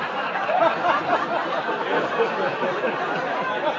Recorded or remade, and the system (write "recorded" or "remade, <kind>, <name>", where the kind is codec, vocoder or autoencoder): recorded